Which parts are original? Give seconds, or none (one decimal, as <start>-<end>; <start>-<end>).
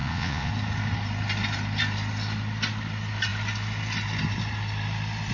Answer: 0.5-5.3